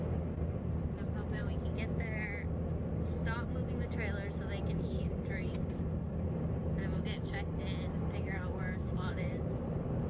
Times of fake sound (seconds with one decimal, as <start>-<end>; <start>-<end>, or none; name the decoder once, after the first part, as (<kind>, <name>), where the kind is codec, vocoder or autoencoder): 0.0-1.4 (vocoder, BigVGAN v2); 4.8-6.6; 8.1-10.1